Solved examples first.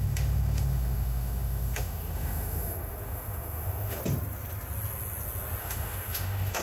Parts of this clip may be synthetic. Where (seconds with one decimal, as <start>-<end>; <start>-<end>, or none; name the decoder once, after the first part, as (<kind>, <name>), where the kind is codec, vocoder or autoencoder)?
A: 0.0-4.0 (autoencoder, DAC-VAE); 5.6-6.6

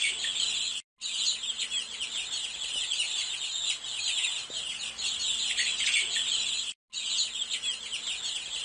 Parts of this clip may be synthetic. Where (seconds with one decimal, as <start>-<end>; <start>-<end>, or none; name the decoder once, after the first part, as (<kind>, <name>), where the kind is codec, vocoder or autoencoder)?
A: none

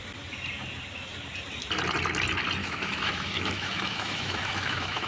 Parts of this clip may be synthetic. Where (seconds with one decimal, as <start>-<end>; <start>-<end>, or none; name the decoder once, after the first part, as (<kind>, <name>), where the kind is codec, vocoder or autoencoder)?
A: 2.6-5.1 (autoencoder, DAC-VAE)

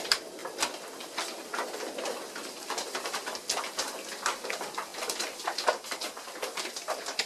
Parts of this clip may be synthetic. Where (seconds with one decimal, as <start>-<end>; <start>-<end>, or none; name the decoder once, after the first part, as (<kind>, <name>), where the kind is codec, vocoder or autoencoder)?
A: none

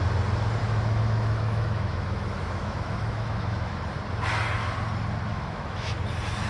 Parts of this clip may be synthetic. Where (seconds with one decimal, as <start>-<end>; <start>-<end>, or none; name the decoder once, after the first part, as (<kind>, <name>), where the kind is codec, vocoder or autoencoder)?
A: 0.6-3.8 (autoencoder, DAC-VAE); 5.3-5.9

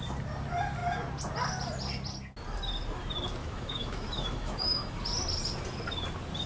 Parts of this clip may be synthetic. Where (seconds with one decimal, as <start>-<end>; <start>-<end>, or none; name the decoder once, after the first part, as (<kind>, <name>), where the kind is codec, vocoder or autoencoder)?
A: 3.4-5.0 (autoencoder, DAC-VAE)